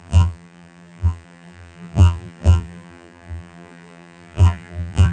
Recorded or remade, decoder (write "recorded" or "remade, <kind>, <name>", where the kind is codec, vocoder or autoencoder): remade, vocoder, BigVGAN v2